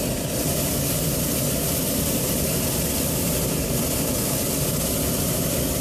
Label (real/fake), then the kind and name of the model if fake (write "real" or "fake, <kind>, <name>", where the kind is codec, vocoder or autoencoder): real